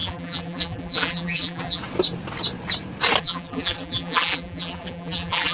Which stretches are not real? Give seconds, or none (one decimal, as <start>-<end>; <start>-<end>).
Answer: 0.0-1.8; 3.2-5.5